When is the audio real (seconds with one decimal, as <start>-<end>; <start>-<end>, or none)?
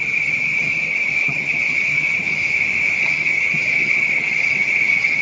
2.4-3.0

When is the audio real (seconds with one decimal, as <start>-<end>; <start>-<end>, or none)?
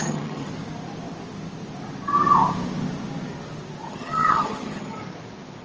0.5-3.9; 5.0-5.6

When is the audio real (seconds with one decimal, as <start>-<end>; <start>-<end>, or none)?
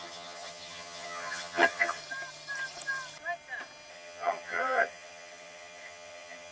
2.0-3.9